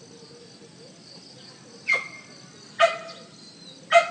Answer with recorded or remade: recorded